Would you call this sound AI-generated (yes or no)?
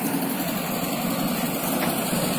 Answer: no